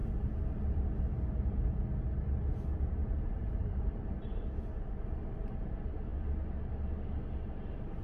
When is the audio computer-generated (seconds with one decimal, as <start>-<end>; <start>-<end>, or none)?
3.0-4.7